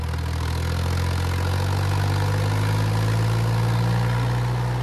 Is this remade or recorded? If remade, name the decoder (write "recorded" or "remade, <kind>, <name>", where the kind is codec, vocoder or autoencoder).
recorded